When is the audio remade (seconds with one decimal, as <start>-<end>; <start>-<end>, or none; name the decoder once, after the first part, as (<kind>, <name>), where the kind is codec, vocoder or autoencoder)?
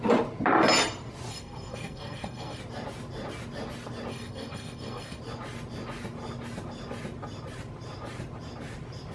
1.3-2.6 (codec, SNAC); 4.1-5.2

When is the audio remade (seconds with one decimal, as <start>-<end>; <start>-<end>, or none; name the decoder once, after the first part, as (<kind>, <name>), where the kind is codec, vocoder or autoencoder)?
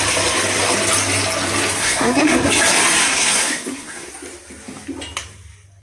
1.8-2.5 (codec, SNAC); 3.0-4.1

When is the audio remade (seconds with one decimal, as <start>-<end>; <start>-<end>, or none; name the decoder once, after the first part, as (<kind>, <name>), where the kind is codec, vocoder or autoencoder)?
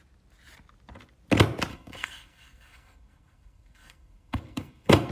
1.7-5.1 (codec, SNAC)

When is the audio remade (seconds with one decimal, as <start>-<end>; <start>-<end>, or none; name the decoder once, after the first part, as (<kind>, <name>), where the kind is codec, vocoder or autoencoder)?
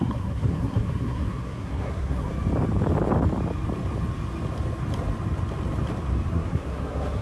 0.0-2.3 (codec, SNAC); 6.3-7.2